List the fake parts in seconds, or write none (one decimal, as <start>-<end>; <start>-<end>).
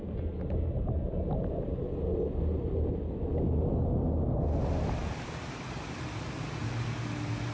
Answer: none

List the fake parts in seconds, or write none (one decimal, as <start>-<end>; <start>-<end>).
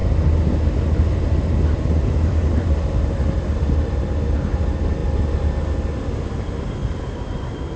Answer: 1.1-5.0; 6.2-7.8